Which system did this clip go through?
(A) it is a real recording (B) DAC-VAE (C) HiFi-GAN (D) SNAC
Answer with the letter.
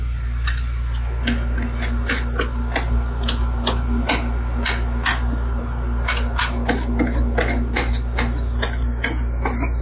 A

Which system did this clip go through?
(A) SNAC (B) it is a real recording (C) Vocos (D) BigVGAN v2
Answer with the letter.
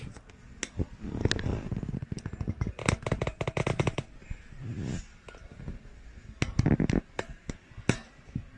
B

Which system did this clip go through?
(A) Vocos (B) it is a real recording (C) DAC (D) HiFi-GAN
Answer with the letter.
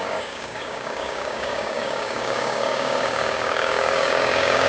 C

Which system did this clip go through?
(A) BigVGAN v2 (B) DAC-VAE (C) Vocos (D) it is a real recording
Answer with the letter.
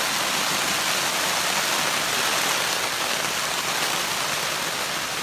D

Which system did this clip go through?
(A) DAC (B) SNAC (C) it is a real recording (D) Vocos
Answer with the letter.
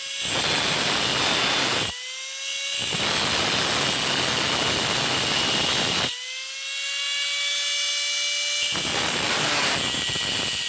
C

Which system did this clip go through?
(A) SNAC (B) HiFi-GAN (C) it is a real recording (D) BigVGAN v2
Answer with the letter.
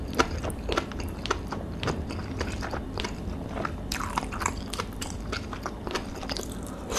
D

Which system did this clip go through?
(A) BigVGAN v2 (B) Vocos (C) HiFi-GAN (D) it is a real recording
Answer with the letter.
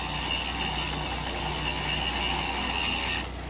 D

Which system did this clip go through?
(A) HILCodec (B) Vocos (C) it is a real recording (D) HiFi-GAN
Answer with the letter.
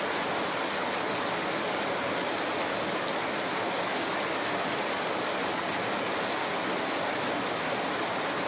C